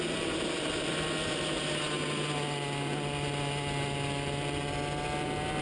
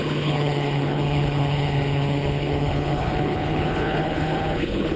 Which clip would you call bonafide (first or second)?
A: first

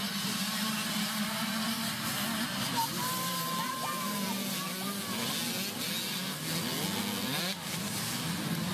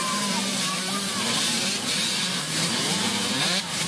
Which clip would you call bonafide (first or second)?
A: first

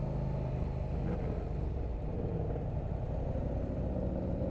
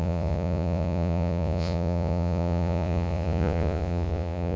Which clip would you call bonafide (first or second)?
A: first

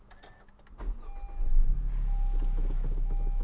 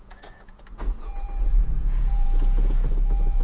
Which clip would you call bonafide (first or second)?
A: first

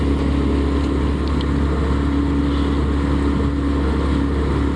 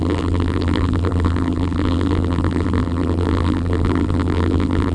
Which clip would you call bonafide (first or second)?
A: first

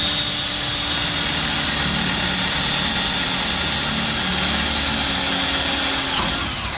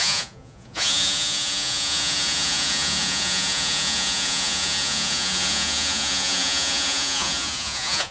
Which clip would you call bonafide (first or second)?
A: first